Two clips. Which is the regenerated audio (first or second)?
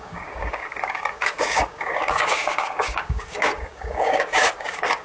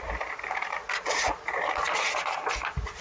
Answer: first